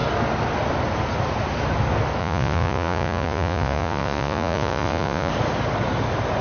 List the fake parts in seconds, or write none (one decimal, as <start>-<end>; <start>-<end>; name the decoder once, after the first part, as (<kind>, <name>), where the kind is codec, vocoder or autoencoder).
2.2-5.3 (vocoder, Vocos)